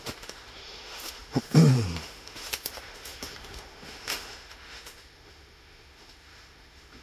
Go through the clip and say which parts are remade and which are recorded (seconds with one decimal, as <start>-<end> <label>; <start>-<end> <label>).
0.0-7.0 remade